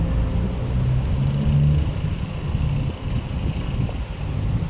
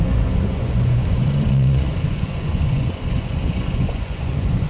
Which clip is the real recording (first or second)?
first